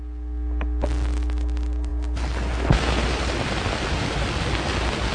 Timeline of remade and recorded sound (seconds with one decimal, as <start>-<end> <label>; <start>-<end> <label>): 0.0-5.1 recorded